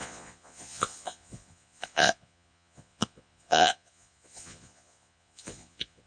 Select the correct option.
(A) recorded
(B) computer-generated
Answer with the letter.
B